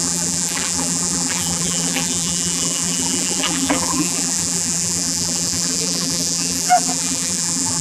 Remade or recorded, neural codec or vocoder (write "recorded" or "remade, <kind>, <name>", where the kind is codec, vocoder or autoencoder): remade, vocoder, BigVGAN v2